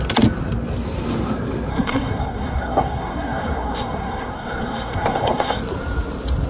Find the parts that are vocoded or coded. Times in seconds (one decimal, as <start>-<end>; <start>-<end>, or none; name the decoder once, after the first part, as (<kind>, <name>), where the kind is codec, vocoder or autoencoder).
1.7-5.6 (codec, SNAC)